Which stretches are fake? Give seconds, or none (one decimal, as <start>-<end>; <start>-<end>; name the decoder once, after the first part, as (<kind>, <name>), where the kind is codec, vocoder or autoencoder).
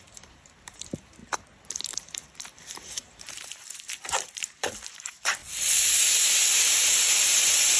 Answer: 0.0-1.2 (vocoder, BigVGAN v2); 1.9-5.4; 6.1-7.8